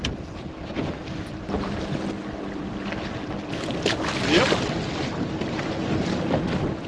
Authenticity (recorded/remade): recorded